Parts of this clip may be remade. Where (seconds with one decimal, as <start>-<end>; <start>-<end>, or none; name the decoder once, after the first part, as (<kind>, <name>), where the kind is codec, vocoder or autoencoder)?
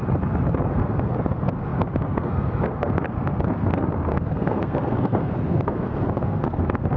0.7-7.0 (codec, SNAC)